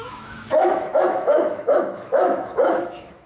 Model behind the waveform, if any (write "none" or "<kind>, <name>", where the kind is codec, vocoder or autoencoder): autoencoder, DAC-VAE